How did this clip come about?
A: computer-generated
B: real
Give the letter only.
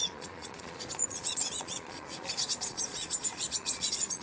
A